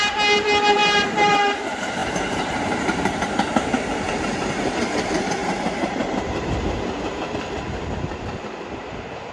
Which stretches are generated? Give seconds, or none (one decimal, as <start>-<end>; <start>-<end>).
0.0-9.3